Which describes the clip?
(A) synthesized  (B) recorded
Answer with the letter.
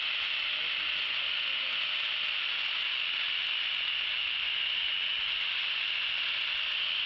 B